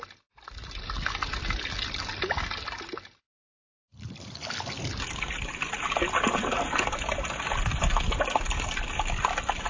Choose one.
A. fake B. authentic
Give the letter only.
B